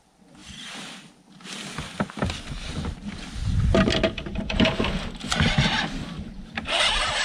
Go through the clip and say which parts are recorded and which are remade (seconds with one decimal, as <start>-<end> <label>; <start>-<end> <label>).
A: 0.0-7.2 recorded